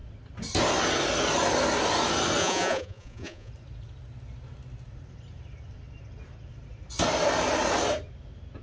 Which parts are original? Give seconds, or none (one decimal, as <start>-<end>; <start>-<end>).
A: 0.0-2.4; 3.5-8.6